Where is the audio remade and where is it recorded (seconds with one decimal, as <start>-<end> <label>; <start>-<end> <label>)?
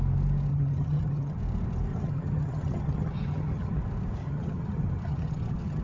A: 0.0-0.5 recorded; 0.5-1.4 remade; 1.4-1.9 recorded; 1.9-3.8 remade; 3.8-4.2 recorded; 4.2-5.8 remade